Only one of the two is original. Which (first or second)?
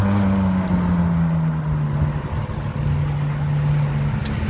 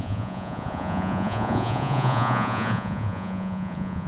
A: first